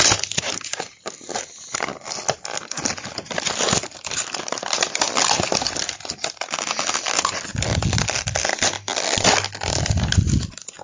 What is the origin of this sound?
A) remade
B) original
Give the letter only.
B